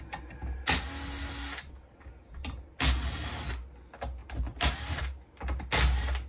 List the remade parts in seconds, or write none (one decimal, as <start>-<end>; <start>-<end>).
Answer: 4.2-5.2